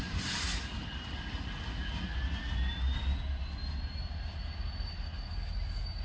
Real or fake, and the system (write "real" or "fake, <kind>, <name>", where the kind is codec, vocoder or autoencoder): real